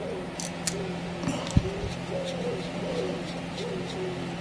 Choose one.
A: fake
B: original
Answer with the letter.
B